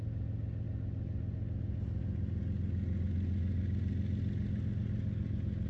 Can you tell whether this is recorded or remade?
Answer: recorded